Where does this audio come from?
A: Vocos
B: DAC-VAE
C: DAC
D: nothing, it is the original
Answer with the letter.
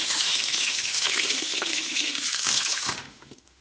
B